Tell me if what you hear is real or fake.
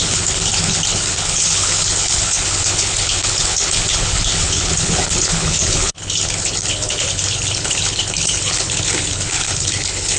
fake